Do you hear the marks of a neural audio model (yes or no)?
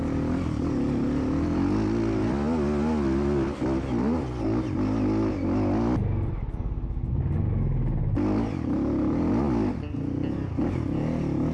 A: no